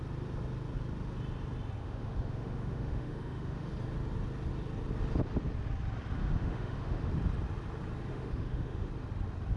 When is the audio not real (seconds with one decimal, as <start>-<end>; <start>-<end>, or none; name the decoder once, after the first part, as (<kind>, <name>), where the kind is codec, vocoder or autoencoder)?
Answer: 1.8-3.7 (autoencoder, DAC-VAE); 6.2-7.1; 8.1-8.9